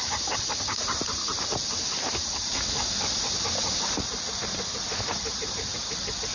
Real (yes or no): no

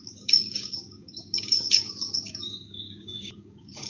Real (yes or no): no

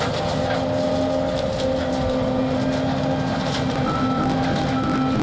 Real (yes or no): yes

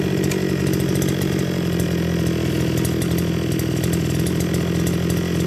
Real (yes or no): yes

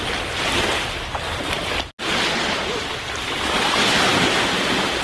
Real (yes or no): yes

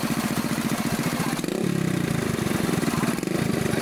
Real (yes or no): yes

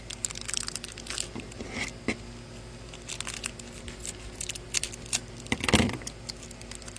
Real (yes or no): yes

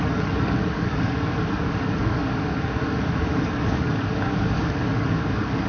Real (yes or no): no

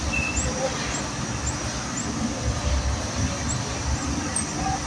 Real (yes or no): yes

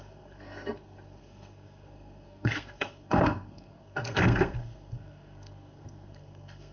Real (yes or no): no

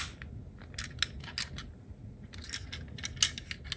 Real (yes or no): yes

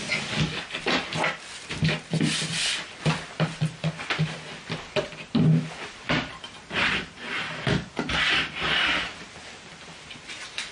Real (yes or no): yes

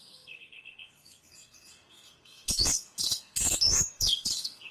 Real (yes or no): no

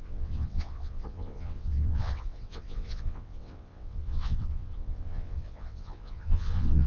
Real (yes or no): no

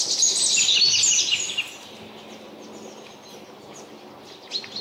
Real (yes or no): yes